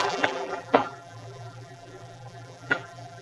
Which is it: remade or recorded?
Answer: remade